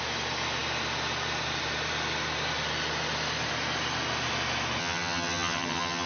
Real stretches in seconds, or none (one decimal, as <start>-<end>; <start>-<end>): 0.0-4.8